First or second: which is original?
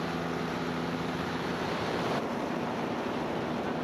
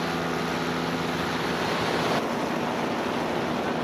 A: second